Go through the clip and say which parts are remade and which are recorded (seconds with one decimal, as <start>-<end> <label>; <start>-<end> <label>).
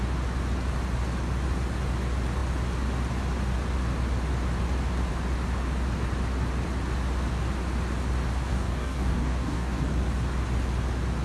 0.0-8.5 recorded; 8.5-9.8 remade; 9.8-11.2 recorded